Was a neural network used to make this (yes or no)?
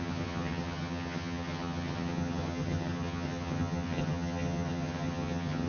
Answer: yes